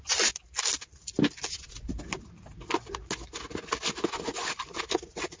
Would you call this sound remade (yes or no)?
no